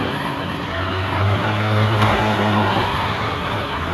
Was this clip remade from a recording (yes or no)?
yes